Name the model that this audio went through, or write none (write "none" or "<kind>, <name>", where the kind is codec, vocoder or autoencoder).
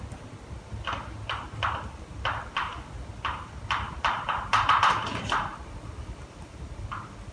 none